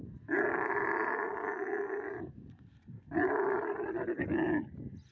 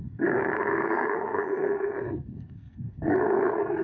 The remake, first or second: second